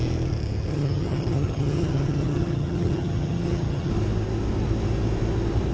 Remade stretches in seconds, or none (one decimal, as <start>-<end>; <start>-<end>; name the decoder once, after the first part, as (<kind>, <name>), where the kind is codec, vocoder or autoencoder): 0.7-3.9 (vocoder, HiFi-GAN)